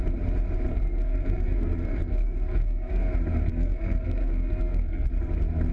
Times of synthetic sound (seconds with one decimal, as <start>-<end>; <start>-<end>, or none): 0.7-3.0; 3.5-5.1